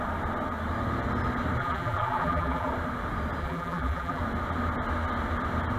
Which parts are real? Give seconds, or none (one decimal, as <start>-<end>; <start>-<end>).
0.0-1.6; 2.7-3.4; 4.2-5.8